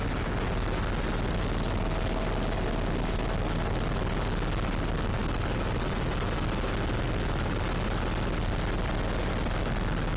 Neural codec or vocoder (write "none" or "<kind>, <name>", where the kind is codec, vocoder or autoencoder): none